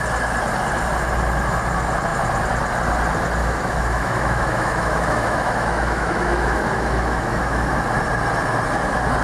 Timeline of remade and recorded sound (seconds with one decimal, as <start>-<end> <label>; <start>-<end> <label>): 0.0-3.4 recorded; 3.4-7.8 remade; 7.8-9.2 recorded